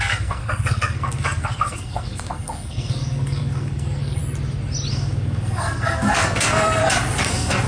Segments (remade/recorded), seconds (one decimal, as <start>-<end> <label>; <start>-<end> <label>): 0.0-4.2 remade; 4.2-4.9 recorded; 4.9-6.8 remade; 6.8-7.3 recorded; 7.3-7.7 remade